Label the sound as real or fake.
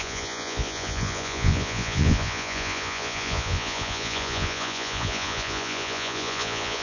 fake